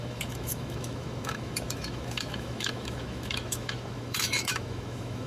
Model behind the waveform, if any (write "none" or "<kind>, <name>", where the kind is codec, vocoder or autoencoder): autoencoder, DAC-VAE